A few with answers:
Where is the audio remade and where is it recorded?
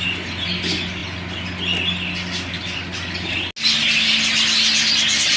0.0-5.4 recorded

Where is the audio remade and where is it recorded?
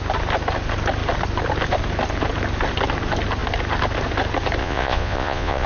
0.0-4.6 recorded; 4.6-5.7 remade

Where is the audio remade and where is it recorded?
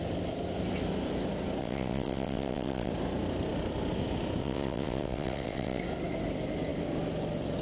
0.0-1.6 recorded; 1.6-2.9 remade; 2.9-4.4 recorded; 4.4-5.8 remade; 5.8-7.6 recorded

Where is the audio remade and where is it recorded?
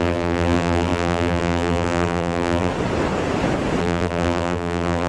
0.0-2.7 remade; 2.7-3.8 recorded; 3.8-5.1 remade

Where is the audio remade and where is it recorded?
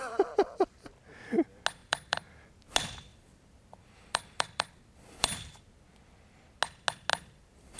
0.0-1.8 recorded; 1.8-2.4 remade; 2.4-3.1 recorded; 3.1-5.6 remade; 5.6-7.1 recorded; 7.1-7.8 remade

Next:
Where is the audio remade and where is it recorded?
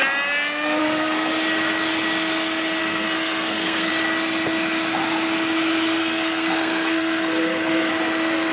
0.0-0.8 recorded; 0.8-1.3 remade; 1.3-2.8 recorded; 2.8-3.9 remade; 3.9-6.0 recorded; 6.0-7.9 remade; 7.9-8.5 recorded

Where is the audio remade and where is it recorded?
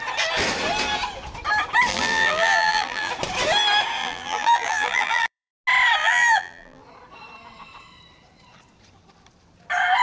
0.0-1.9 recorded; 1.9-3.1 remade; 3.1-4.0 recorded; 4.0-5.5 remade; 5.5-6.0 recorded; 6.0-6.8 remade; 6.8-10.0 recorded